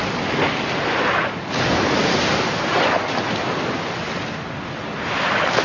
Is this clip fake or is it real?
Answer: real